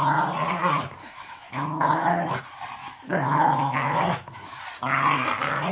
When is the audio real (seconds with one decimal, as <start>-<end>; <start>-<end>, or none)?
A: 0.0-1.0; 2.4-2.8; 4.6-5.7